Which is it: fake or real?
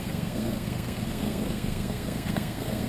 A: fake